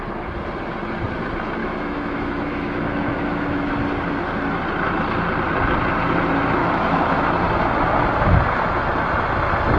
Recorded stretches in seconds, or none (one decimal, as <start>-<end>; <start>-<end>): 0.0-1.6; 3.7-6.6; 7.3-9.8